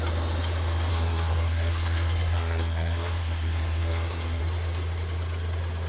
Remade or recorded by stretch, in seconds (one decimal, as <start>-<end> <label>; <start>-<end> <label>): 0.0-0.9 recorded; 0.9-4.4 remade; 4.4-5.9 recorded